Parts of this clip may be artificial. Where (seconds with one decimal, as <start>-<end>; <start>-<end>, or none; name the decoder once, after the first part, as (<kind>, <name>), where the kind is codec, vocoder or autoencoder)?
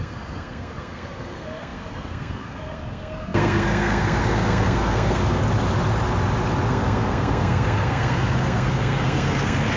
0.0-5.4 (codec, SNAC); 6.7-9.8